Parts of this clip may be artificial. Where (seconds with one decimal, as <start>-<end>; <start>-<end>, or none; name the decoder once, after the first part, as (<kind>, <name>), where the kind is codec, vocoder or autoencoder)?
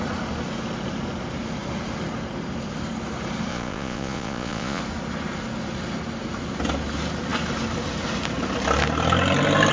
3.5-4.8 (vocoder, Vocos)